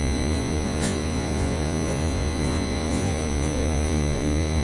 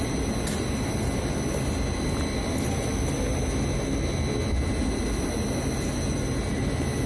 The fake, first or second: first